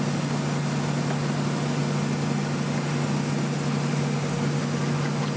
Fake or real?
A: real